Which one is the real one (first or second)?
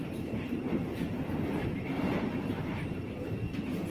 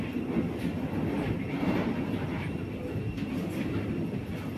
second